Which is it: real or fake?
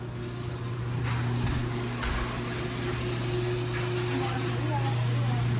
real